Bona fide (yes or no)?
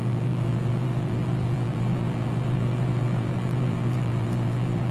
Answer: no